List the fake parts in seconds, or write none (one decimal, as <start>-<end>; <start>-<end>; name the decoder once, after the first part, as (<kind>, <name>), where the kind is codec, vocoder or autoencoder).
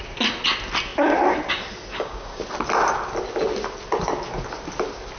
1.9-2.4 (codec, DAC)